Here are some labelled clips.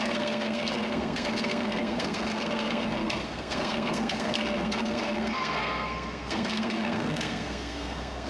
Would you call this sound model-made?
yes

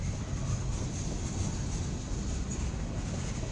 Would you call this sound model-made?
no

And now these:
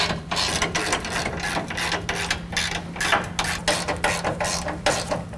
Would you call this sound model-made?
no